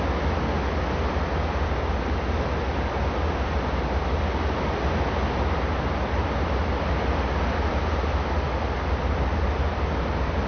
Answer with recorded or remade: recorded